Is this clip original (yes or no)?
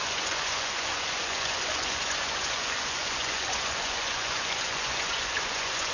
no